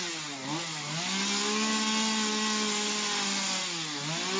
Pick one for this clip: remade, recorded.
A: recorded